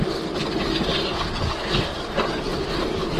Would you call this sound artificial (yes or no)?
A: no